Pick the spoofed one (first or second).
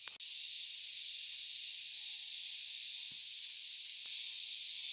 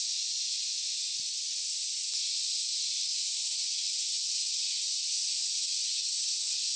second